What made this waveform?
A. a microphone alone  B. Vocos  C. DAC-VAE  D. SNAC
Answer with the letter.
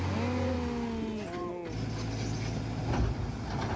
A